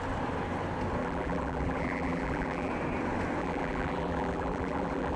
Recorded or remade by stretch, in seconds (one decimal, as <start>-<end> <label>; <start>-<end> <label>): 0.0-1.0 recorded; 1.0-2.7 remade; 2.7-3.4 recorded; 3.4-5.2 remade